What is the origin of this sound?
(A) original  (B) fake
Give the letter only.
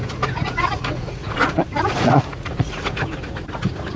B